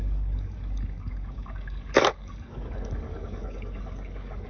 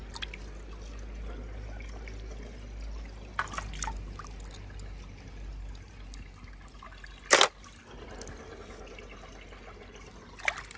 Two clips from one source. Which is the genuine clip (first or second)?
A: second